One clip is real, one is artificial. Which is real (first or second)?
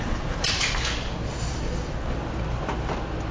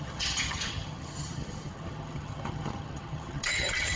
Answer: first